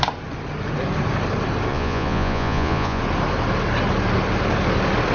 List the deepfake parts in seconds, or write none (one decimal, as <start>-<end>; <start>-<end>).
1.7-3.0